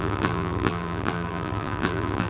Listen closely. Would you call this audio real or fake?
fake